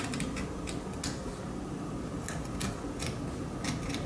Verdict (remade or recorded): recorded